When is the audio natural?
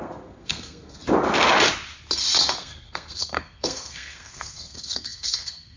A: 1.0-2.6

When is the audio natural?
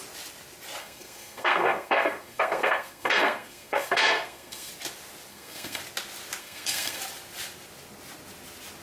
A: 0.0-0.8; 4.7-5.3; 5.8-6.4; 7.0-8.8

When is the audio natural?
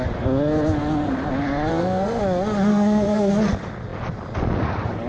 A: 0.0-1.7; 2.2-2.7; 3.3-5.1